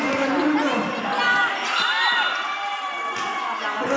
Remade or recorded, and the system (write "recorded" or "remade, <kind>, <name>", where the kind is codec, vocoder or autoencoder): recorded